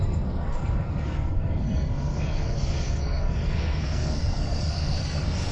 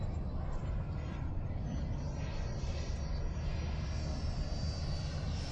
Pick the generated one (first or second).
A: first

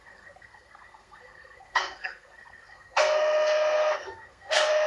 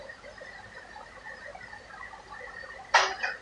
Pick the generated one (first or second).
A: first